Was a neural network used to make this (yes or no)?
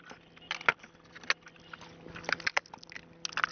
no